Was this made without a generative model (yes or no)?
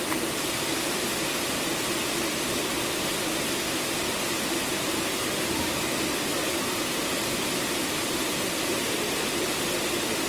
yes